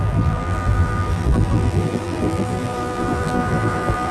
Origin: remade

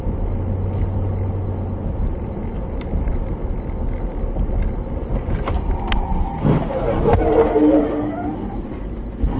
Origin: recorded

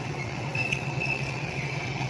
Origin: remade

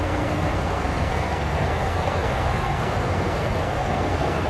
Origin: remade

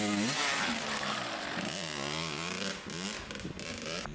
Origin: recorded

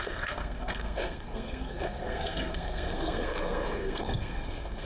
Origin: remade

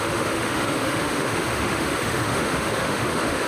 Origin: remade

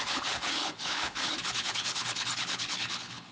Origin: remade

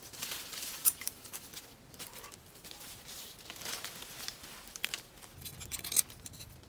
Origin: recorded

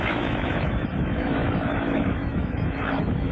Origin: remade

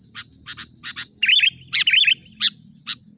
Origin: recorded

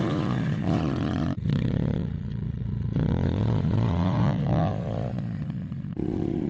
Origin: remade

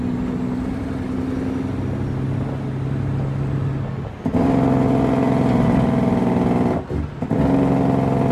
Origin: recorded